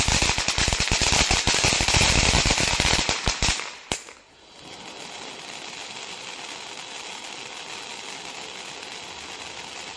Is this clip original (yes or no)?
yes